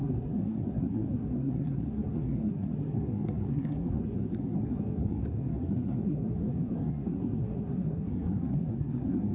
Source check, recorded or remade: remade